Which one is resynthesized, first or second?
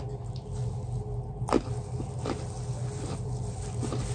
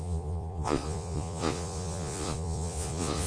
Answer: second